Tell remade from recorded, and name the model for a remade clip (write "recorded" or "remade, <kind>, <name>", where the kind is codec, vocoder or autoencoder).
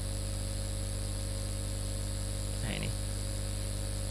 recorded